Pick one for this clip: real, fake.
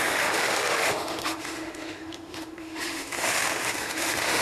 fake